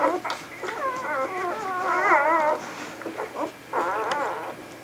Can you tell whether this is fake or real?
real